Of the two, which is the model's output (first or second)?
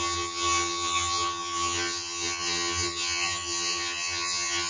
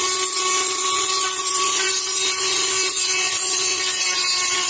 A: first